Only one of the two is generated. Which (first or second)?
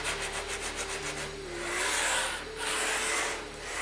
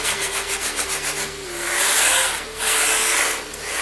second